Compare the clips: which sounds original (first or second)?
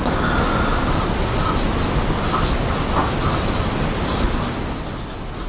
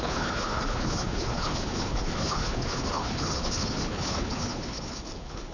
first